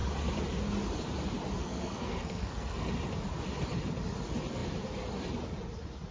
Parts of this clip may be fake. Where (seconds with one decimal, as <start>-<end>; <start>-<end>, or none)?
1.6-2.9